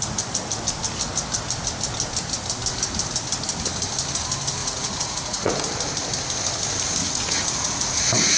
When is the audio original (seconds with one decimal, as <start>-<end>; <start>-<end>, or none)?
0.0-4.6; 5.5-7.0